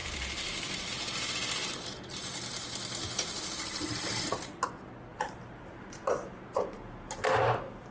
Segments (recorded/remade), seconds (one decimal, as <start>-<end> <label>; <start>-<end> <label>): 0.0-0.9 remade; 0.9-5.1 recorded; 5.1-7.9 remade